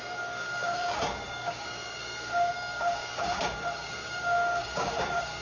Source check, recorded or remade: remade